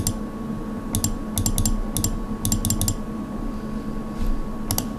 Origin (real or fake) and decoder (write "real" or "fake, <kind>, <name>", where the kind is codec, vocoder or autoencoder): real